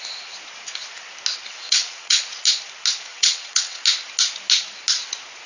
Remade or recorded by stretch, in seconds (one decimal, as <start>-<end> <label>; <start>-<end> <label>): 0.0-1.5 recorded; 1.5-2.2 remade; 2.2-3.1 recorded; 3.1-3.8 remade; 3.8-5.5 recorded